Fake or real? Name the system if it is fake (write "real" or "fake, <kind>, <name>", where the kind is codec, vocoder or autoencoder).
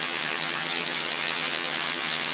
fake, vocoder, HiFi-GAN